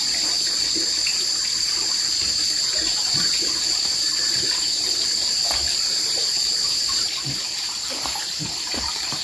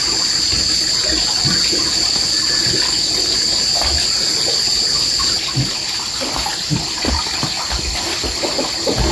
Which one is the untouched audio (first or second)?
second